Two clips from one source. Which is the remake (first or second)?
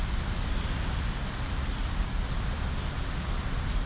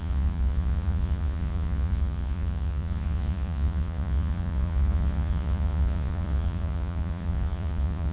second